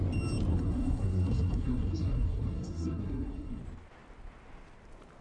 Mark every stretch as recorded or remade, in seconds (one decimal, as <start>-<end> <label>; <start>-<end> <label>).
0.0-0.5 recorded; 0.5-3.6 remade; 3.6-5.2 recorded